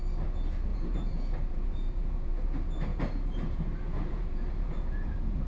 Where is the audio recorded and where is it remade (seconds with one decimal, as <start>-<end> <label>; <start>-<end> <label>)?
0.0-0.7 recorded; 0.7-2.3 remade; 2.3-2.9 recorded; 2.9-5.5 remade